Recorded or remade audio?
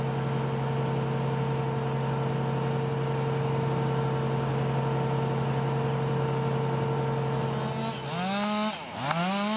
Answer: recorded